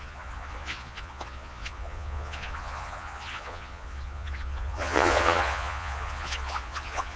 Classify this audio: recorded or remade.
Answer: remade